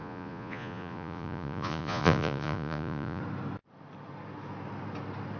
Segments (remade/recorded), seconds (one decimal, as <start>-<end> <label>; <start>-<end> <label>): 0.0-3.2 remade; 3.2-5.4 recorded